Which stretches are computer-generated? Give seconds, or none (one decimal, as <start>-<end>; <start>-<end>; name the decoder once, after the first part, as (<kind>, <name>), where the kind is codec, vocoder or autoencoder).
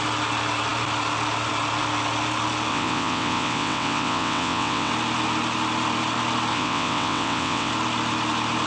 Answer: 2.7-4.9 (vocoder, WaveNeXt); 6.5-7.7